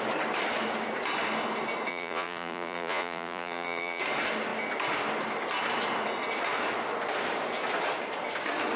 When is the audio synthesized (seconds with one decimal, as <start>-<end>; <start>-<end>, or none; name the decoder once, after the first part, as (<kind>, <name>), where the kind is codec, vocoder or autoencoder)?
1.9-4.0 (vocoder, Vocos)